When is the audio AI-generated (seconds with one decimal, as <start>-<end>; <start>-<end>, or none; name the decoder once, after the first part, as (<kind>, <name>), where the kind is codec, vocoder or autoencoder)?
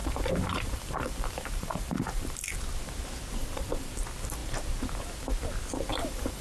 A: 0.0-2.5 (vocoder, BigVGAN v2); 3.4-3.9; 5.9-6.4